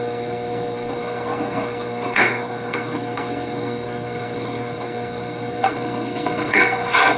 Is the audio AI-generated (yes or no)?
yes